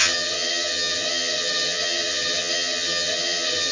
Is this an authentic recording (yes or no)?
no